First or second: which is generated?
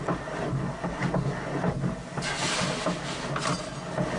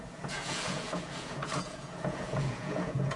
second